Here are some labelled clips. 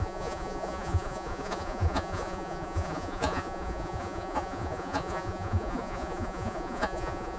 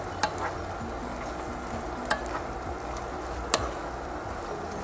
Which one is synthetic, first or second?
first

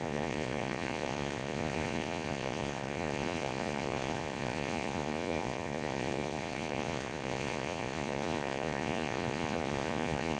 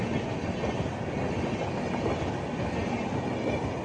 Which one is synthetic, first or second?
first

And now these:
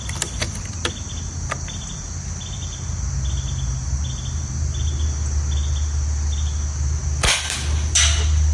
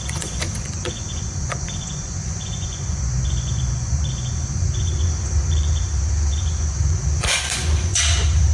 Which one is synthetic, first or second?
second